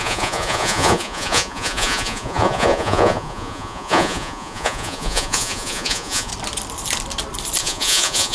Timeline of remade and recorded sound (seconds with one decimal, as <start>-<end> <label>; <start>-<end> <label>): 0.0-6.3 remade; 6.3-7.6 recorded; 7.6-8.3 remade